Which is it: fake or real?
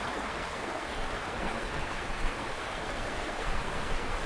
fake